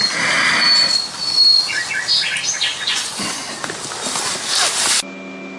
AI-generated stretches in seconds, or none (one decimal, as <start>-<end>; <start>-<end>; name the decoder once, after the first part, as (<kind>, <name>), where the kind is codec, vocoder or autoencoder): 2.7-3.5 (vocoder, Vocos)